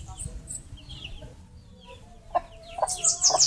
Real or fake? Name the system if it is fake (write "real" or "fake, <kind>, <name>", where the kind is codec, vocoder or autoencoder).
real